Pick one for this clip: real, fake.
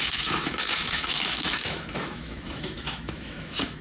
fake